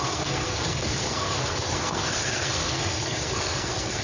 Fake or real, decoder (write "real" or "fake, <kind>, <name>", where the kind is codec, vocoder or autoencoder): fake, codec, SNAC